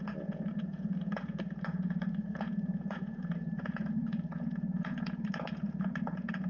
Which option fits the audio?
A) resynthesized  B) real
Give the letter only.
A